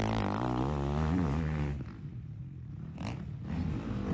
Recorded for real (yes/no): yes